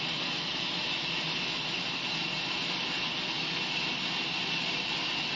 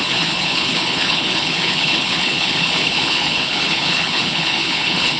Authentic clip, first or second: first